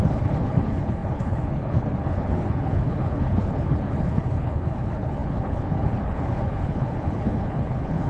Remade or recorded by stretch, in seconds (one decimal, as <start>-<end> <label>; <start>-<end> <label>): 0.0-8.1 remade